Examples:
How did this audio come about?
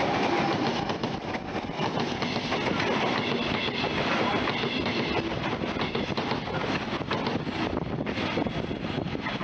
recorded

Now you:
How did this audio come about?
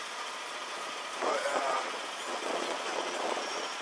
remade